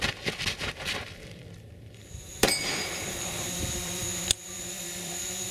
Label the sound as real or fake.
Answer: fake